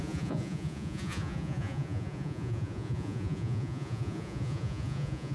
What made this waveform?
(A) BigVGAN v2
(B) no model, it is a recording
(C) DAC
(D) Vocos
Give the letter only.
D